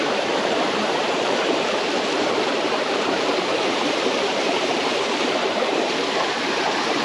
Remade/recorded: remade